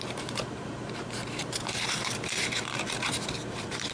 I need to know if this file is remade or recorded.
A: remade